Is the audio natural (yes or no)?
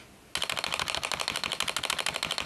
yes